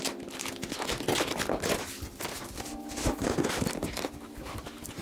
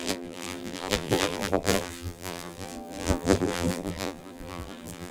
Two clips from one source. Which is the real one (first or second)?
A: first